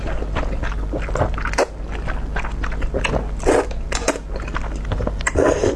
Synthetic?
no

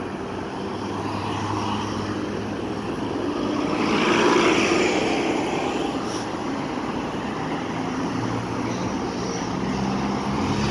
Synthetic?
no